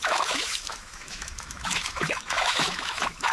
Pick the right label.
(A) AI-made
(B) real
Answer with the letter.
A